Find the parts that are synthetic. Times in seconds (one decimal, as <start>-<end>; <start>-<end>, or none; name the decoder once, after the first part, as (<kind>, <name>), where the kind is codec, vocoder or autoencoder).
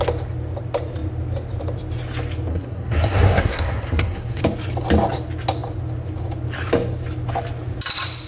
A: 2.5-4.4 (codec, SNAC)